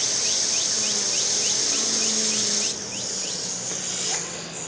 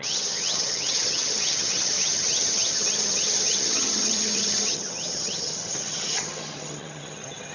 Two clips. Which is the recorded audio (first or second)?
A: first